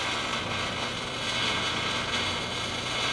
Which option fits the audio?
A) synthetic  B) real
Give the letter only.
B